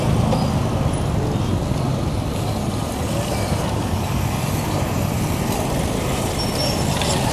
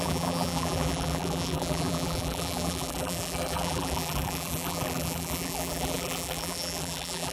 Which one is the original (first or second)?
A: first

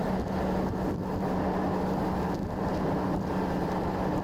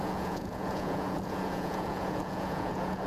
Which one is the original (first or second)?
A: first